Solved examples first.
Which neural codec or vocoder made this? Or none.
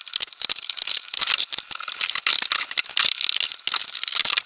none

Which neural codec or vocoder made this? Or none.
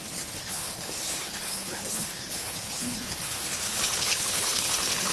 codec, HILCodec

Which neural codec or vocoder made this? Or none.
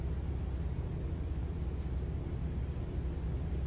none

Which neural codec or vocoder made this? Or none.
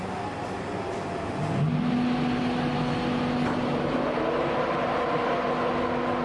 none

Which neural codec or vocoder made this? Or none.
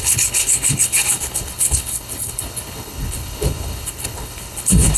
codec, HILCodec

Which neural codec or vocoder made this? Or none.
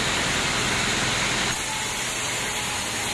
none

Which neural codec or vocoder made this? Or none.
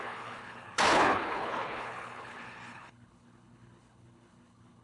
codec, HILCodec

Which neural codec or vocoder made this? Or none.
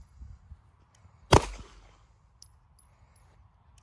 none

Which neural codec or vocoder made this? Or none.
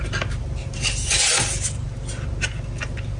none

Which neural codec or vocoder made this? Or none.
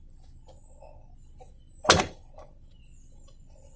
none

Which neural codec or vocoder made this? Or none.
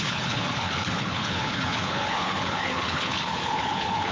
codec, HILCodec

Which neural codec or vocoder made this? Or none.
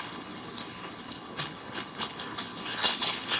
codec, HILCodec